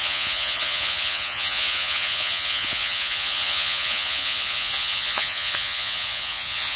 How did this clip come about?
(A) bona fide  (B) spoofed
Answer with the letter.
B